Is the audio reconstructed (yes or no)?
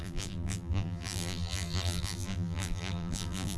yes